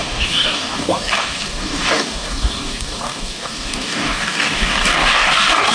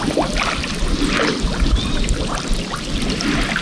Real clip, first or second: second